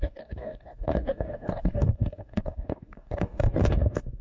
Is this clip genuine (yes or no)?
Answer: no